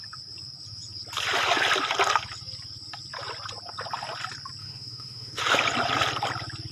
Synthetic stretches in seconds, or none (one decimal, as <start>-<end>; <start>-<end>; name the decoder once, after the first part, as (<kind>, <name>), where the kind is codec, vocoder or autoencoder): 4.6-5.4 (autoencoder, DAC-VAE)